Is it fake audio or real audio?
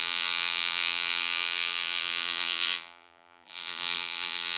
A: fake